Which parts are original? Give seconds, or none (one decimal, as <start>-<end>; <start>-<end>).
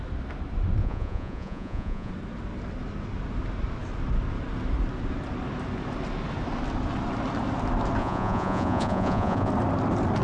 0.0-0.8; 2.1-8.0; 9.5-10.2